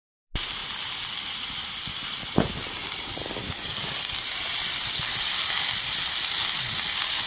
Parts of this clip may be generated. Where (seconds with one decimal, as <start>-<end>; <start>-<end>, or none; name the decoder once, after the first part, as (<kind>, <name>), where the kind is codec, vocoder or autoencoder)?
2.8-7.3 (vocoder, BigVGAN v2)